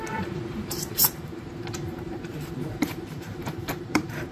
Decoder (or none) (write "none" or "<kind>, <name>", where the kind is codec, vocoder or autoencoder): vocoder, BigVGAN v2